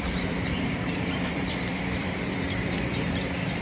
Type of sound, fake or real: fake